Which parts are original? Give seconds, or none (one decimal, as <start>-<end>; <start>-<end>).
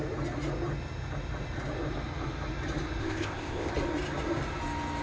0.0-3.0; 3.7-5.0